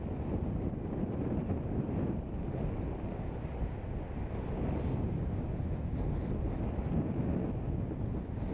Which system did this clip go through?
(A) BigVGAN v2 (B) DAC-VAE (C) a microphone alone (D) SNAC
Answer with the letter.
C